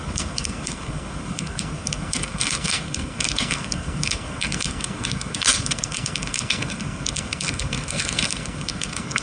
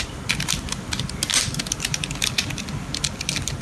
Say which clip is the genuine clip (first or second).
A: second